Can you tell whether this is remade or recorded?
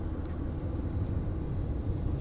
recorded